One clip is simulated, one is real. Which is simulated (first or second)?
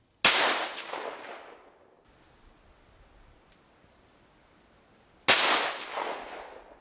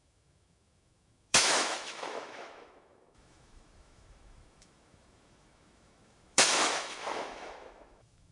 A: second